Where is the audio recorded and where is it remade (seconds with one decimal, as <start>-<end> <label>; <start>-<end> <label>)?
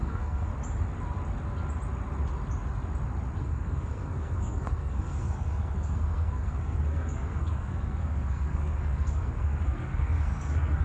0.0-0.5 remade; 0.5-3.4 recorded; 3.4-10.8 remade